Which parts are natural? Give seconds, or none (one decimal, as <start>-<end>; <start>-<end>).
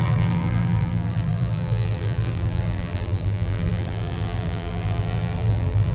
none